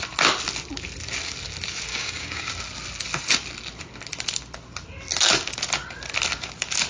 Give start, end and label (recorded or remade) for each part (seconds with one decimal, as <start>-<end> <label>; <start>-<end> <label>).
0.0-1.9 recorded; 1.9-2.5 remade; 2.5-6.9 recorded